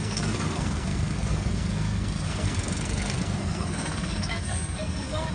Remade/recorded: remade